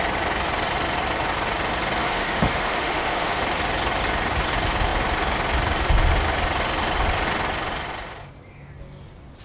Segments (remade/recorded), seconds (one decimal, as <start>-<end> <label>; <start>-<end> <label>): 0.0-2.0 recorded; 2.0-3.4 remade; 3.4-9.4 recorded